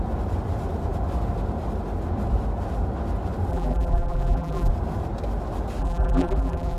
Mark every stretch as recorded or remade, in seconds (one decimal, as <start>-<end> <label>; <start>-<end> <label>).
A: 0.0-3.5 recorded; 3.5-4.7 remade; 4.7-5.8 recorded; 5.8-6.8 remade